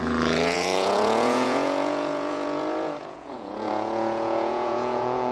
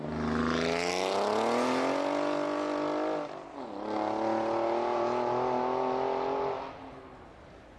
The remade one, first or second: first